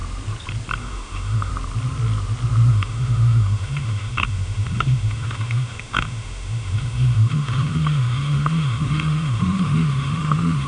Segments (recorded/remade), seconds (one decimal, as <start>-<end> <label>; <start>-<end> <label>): 0.0-0.8 recorded; 0.8-1.5 remade; 1.5-2.7 recorded; 2.7-10.7 remade